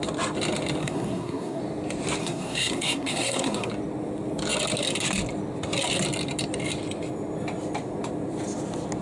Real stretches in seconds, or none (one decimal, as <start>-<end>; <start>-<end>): 0.0-0.8; 1.6-2.2; 3.7-9.0